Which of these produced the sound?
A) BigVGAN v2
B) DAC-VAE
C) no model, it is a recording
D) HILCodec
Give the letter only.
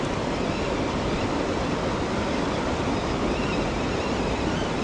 C